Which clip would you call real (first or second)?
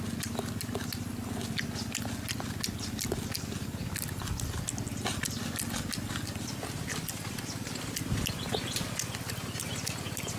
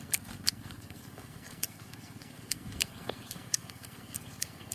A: first